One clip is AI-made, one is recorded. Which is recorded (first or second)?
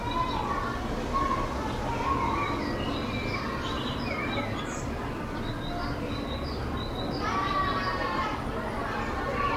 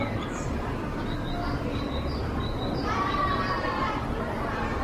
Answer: first